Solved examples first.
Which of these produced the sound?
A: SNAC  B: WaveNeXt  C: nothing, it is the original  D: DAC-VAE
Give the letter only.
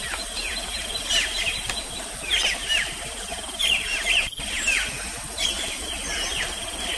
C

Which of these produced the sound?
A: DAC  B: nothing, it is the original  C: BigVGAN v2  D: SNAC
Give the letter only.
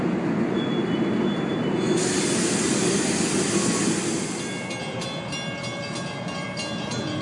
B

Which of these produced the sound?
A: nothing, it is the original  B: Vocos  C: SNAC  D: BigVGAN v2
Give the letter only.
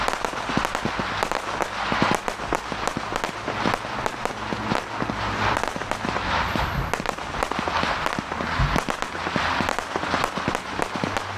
A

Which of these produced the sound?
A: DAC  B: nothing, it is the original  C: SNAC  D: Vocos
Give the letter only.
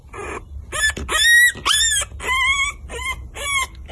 B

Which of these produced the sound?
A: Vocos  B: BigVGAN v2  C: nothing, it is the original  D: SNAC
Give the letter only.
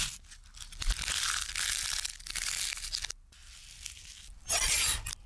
C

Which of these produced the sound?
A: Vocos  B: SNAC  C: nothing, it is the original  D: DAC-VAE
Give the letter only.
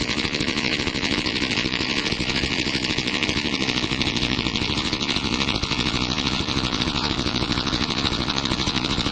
A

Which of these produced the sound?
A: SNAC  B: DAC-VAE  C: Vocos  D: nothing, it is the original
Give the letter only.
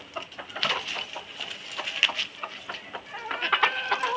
D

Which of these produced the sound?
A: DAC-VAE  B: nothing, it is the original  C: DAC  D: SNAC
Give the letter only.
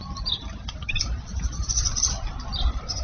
B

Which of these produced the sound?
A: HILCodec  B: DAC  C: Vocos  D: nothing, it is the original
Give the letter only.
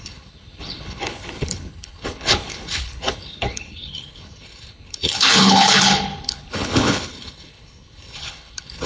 A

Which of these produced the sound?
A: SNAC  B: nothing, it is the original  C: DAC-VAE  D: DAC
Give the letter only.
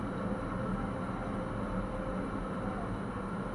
B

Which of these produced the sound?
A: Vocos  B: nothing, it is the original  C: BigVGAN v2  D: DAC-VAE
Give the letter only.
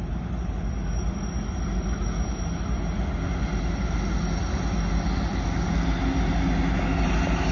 B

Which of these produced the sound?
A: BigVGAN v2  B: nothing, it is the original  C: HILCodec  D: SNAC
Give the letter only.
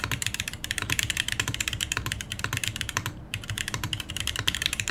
A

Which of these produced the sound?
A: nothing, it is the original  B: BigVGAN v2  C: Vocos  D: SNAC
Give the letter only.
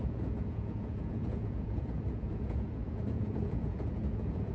C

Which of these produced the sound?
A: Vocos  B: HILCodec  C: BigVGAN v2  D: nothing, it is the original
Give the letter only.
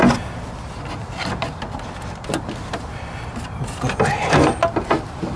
D